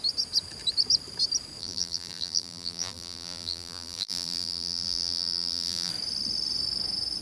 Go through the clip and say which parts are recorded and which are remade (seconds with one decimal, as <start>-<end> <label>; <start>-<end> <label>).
0.0-1.6 recorded; 1.6-5.9 remade; 5.9-7.2 recorded